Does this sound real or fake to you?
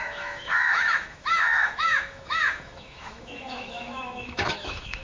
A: fake